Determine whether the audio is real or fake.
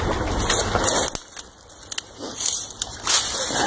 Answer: real